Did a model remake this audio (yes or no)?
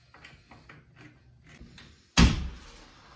no